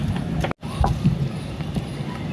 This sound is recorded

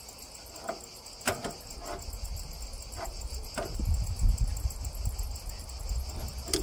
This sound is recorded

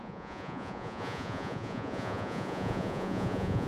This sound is remade